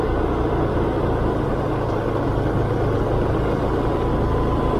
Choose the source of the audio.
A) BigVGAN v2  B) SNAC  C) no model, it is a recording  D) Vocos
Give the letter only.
C